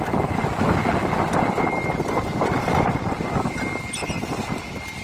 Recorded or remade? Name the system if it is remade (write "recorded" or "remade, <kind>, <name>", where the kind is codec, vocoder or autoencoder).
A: recorded